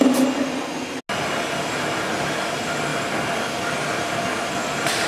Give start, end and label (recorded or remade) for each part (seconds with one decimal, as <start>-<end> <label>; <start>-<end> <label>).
0.0-5.1 recorded